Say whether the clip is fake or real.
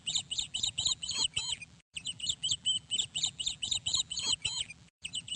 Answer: fake